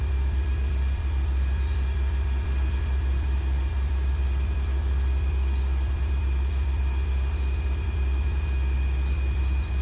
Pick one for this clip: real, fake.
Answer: fake